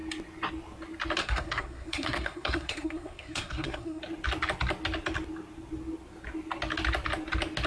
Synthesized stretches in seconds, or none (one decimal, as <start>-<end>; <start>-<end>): 1.2-4.0